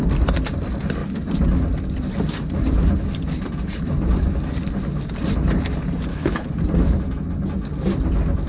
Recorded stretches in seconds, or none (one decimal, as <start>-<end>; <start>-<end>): 0.0-6.1; 6.6-8.5